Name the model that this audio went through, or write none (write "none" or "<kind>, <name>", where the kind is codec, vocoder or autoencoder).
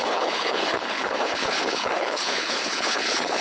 codec, HILCodec